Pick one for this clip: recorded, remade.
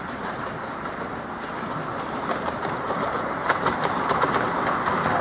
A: remade